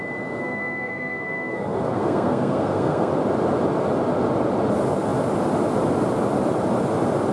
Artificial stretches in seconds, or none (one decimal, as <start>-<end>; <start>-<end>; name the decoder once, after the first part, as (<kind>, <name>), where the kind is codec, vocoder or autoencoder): 0.4-3.1 (codec, SNAC)